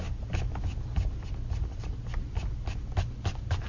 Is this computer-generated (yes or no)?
no